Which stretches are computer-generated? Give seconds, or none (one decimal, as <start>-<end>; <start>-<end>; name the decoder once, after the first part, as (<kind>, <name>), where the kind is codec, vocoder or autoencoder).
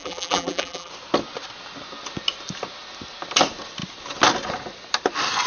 0.0-0.9 (vocoder, BigVGAN v2)